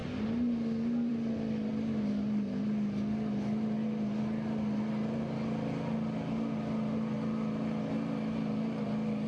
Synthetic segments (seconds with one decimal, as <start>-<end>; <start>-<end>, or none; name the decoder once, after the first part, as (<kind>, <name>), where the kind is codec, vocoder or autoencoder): none

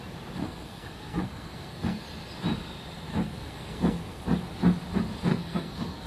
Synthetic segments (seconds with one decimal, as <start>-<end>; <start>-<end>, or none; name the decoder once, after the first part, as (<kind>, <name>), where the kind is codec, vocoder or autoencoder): 0.4-2.0 (codec, SNAC); 3.1-4.2; 5.3-6.1